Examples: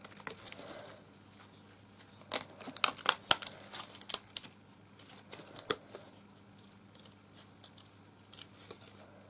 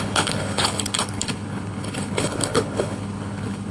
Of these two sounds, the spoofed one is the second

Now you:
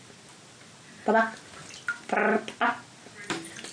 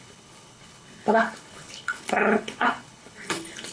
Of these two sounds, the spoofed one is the second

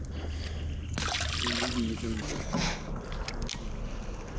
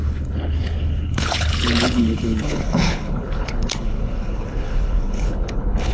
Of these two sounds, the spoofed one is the second